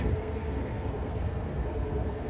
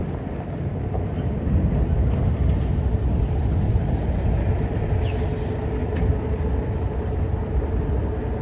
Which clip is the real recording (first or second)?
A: second